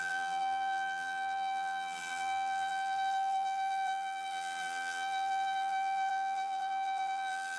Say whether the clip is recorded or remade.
remade